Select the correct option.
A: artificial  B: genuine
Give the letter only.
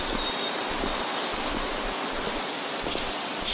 B